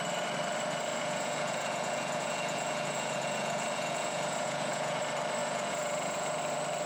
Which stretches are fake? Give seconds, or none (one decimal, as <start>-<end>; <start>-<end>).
0.9-5.0; 5.4-6.4